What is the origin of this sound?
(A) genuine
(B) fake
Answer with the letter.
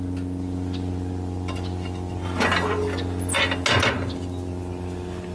A